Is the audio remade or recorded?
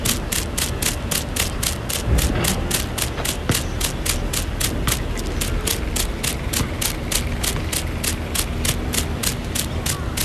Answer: recorded